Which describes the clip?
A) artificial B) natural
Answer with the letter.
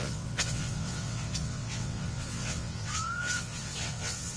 A